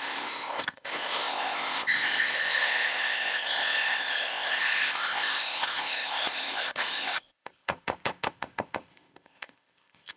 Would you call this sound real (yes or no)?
no